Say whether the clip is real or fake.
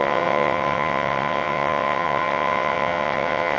fake